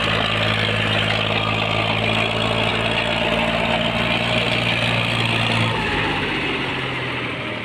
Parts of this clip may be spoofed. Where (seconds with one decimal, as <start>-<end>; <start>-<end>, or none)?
none